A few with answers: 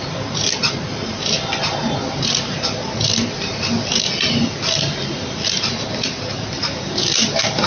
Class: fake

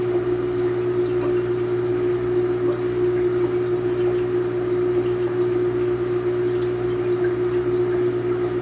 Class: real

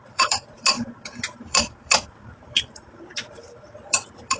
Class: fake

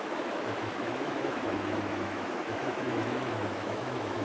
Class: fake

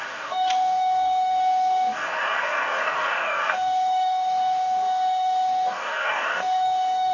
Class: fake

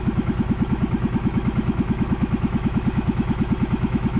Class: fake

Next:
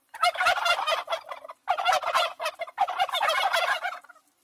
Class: fake